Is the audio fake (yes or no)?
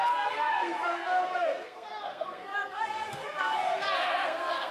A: yes